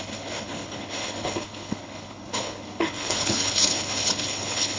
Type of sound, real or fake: fake